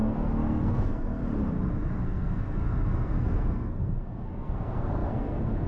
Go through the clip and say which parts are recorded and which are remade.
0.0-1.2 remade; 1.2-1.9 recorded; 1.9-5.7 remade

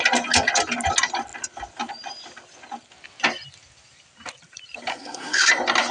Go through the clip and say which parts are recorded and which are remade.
0.0-4.9 recorded; 4.9-5.5 remade; 5.5-5.9 recorded

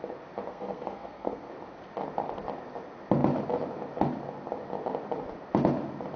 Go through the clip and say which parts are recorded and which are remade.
0.0-0.5 recorded; 0.5-1.5 remade; 1.5-6.2 recorded

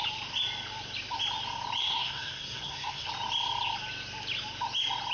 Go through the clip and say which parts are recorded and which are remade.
0.0-1.8 recorded; 1.8-3.1 remade; 3.1-5.1 recorded

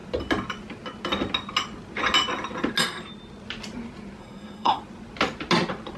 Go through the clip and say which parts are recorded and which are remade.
0.0-4.2 recorded; 4.2-4.8 remade; 4.8-6.0 recorded